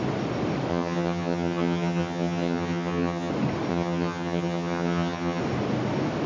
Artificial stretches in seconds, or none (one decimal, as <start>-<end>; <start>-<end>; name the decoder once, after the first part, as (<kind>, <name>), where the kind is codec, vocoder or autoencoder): 0.7-3.3 (vocoder, HiFi-GAN); 3.7-5.4